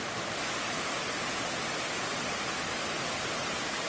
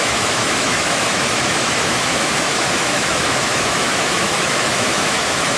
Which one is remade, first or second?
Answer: second